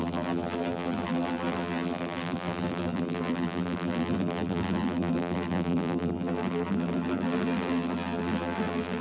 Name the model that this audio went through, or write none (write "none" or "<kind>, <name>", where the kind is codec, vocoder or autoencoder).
vocoder, BigVGAN v2